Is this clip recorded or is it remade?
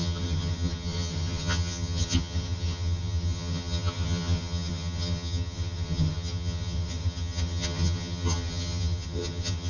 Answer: remade